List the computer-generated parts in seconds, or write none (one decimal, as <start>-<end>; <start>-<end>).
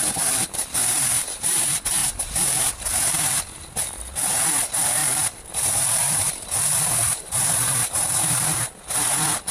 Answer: 0.8-1.6; 2.0-2.7; 5.0-9.1